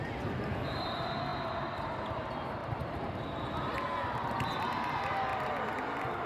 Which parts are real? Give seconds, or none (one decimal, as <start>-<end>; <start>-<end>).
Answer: 0.0-2.6; 3.2-5.3